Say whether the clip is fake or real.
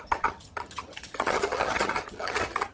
fake